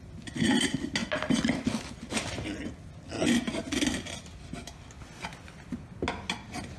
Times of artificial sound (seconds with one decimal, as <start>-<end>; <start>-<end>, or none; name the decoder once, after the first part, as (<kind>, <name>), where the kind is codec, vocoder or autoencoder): none